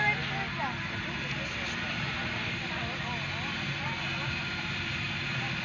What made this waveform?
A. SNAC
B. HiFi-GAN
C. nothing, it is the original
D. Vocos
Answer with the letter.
C